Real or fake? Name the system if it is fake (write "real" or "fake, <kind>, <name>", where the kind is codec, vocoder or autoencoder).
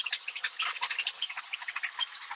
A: real